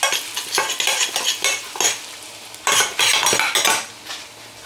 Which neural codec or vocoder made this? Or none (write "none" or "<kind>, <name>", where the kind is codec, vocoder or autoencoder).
none